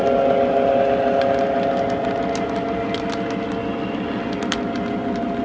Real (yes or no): yes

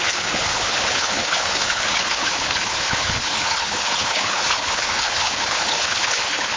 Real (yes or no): no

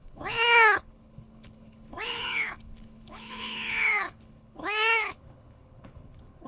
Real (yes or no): no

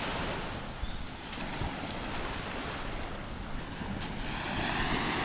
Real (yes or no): yes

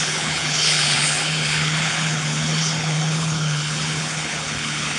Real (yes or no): no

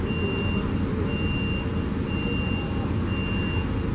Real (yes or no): yes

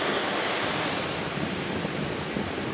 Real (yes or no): yes